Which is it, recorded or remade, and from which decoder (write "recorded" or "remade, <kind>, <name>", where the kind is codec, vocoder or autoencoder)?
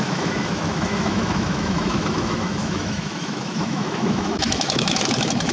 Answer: remade, autoencoder, DAC-VAE